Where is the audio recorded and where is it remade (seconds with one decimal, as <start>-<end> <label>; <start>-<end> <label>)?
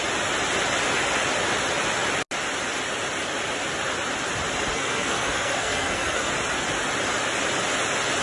0.0-4.7 recorded; 4.7-6.3 remade; 6.3-8.2 recorded